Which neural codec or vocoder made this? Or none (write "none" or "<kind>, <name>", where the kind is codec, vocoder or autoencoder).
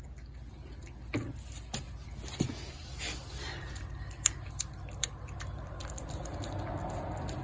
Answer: none